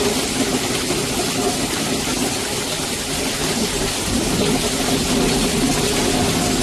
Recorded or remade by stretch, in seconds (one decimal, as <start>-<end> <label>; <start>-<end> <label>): 0.0-6.6 recorded